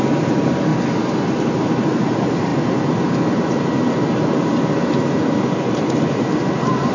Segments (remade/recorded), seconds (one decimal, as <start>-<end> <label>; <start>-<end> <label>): 0.0-0.7 remade; 0.7-1.4 recorded; 1.4-6.9 remade

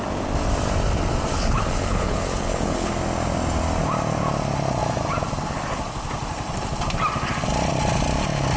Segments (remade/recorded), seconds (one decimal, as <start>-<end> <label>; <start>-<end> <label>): 0.0-1.3 recorded; 1.3-2.9 remade; 2.9-8.6 recorded

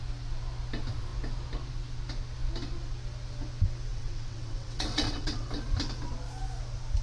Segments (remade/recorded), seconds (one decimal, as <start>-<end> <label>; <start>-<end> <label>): 0.0-3.9 recorded; 3.9-5.5 remade; 5.5-7.0 recorded